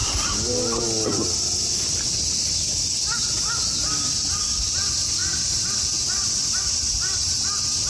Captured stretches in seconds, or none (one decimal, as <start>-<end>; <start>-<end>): 0.0-6.2; 6.8-7.9

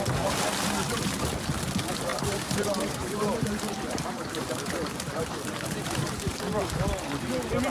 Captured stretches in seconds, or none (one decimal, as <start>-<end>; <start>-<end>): 0.0-2.1; 6.4-7.7

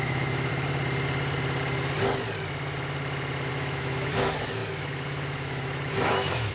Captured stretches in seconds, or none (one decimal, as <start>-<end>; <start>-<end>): 0.5-3.5

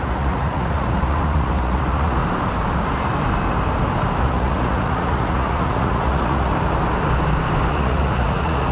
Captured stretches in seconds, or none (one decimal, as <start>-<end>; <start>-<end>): 2.2-4.2; 6.5-7.7

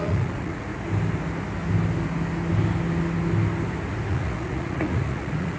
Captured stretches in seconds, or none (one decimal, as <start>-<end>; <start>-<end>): 0.7-4.1